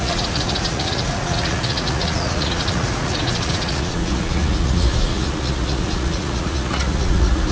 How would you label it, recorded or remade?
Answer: remade